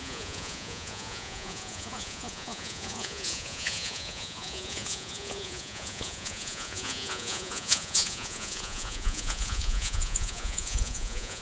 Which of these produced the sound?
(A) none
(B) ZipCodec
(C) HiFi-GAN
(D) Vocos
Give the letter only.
D